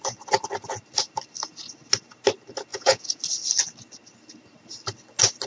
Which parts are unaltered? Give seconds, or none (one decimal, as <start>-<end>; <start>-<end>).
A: 0.0-2.7; 3.2-5.5